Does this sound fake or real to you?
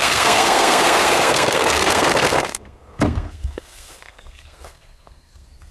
fake